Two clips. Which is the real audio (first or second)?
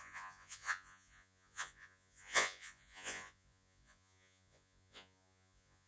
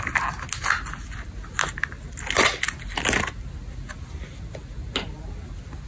second